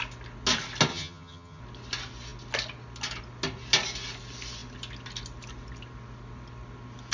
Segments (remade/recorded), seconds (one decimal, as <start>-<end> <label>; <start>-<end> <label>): 0.0-0.9 recorded; 0.9-1.6 remade; 1.6-7.1 recorded